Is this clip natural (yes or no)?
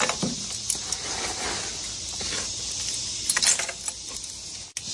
yes